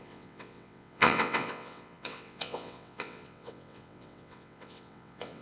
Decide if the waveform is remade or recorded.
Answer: remade